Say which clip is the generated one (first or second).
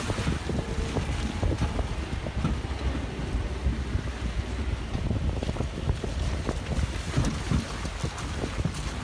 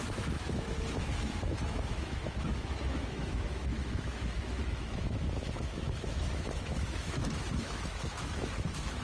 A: second